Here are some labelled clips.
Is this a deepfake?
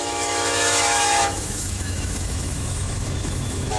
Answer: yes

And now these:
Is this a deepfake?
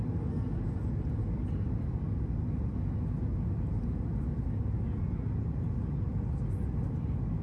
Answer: no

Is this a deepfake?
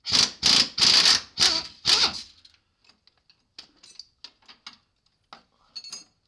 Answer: no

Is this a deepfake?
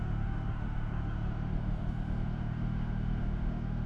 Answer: yes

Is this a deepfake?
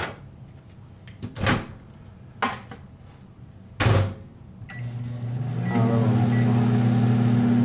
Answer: no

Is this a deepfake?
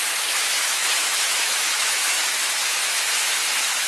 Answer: yes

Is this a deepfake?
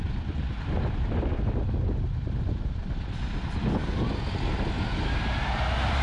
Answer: no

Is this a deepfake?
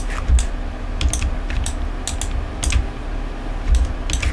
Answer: no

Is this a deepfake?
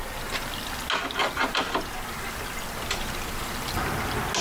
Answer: no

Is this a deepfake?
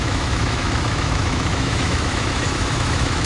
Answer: yes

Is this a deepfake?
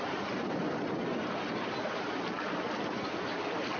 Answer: no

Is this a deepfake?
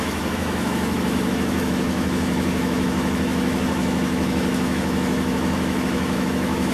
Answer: yes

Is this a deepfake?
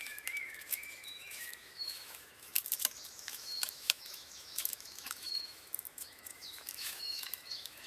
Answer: yes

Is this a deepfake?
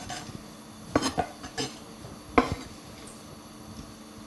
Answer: no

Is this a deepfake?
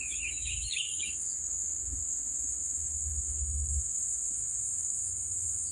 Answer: yes